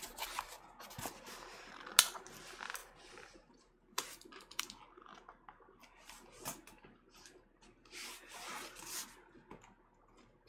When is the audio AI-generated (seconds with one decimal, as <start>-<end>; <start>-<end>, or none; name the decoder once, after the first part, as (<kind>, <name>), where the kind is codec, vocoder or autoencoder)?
2.8-4.6 (vocoder, BigVGAN v2)